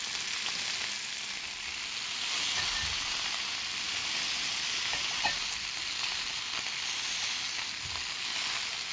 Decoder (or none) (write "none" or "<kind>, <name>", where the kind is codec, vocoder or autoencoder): none